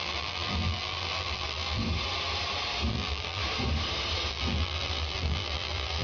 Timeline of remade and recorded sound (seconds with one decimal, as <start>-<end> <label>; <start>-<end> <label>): 0.0-1.8 remade; 1.8-2.9 recorded; 2.9-3.4 remade; 3.4-4.3 recorded; 4.3-6.0 remade